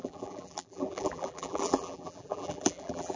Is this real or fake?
fake